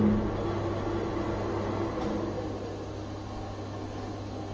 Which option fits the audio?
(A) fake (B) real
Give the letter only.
B